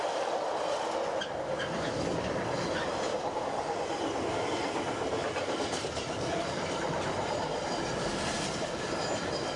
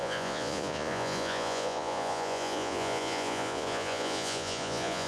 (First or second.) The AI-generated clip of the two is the second